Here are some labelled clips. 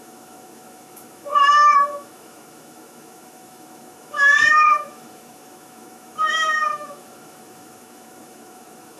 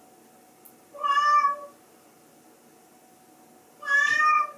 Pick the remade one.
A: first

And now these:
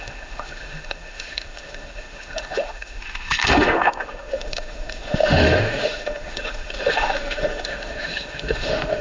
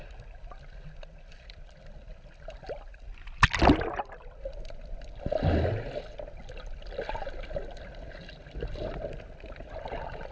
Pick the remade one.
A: first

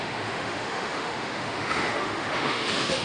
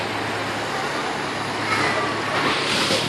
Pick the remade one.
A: first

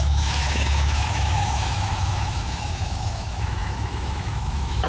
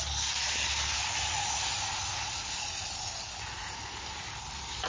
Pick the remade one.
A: first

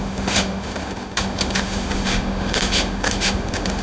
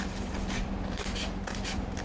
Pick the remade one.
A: first